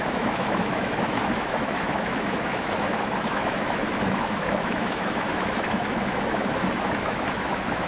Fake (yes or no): yes